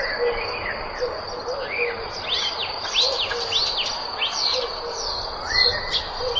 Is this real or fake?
real